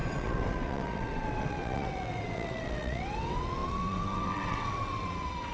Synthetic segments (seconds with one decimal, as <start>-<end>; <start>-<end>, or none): 0.0-5.5